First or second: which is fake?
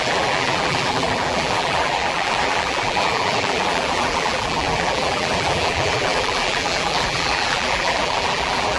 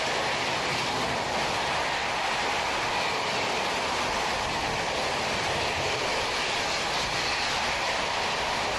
first